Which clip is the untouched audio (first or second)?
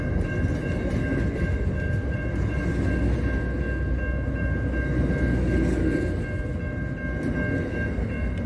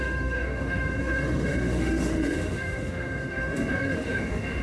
first